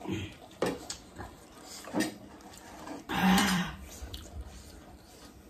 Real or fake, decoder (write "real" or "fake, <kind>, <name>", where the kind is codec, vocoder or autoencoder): fake, vocoder, BigVGAN v2